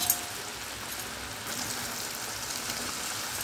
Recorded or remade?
recorded